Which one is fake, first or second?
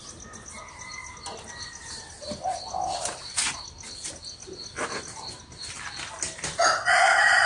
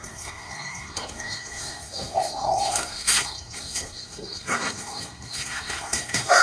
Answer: second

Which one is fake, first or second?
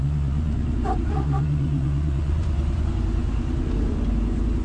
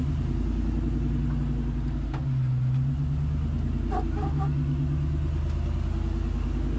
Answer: first